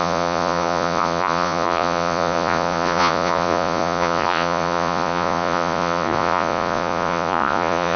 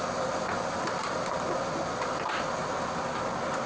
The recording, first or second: second